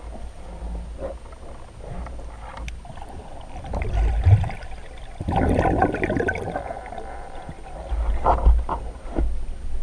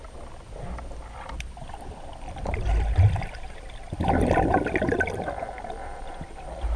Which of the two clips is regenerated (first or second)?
second